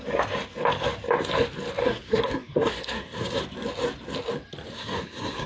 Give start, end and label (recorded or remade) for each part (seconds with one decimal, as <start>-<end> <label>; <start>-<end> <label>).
0.0-1.8 recorded; 1.8-3.4 remade; 3.4-4.7 recorded; 4.7-5.5 remade